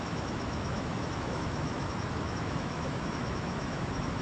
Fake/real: fake